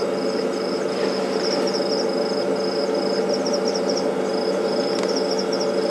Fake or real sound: real